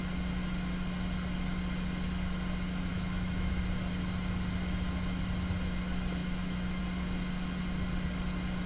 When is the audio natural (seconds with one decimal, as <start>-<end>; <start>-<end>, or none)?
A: 0.0-2.9; 3.5-6.2; 6.8-8.7